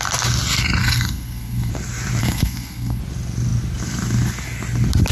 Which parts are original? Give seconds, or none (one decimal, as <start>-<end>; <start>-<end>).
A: 0.0-0.8; 1.7-2.2; 3.0-5.1